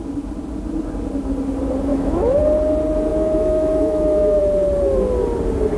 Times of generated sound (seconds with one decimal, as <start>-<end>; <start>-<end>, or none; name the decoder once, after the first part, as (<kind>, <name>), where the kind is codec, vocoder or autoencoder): 1.9-2.4 (autoencoder, DAC-VAE); 3.1-4.4

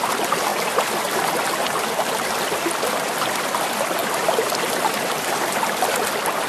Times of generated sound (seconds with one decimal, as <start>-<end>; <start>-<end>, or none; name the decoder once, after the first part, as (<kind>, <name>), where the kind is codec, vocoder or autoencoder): none

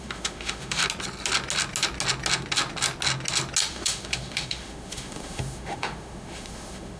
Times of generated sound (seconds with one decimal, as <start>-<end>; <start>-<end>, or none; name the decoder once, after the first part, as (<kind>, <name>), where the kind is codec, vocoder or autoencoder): 0.0-0.8 (autoencoder, DAC-VAE); 3.7-7.0

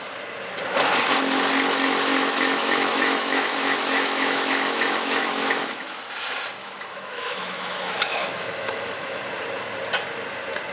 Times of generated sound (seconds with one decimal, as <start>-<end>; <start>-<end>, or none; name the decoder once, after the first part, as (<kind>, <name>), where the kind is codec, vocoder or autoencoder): 2.1-6.0 (autoencoder, DAC-VAE); 6.6-9.2

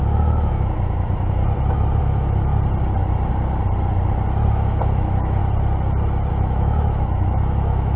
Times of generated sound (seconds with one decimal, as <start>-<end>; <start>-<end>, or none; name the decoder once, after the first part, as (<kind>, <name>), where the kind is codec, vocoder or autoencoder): 0.0-1.4 (autoencoder, DAC-VAE); 2.0-2.5; 4.5-5.4; 6.3-8.0

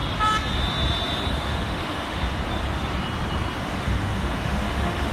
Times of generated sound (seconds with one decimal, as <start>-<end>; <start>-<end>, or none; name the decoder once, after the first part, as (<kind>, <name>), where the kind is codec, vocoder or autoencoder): 1.3-2.2 (autoencoder, DAC-VAE); 3.6-5.1